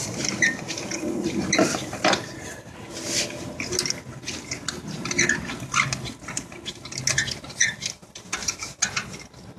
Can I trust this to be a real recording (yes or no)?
yes